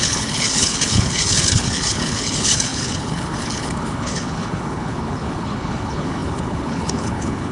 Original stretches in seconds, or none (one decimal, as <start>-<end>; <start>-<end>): none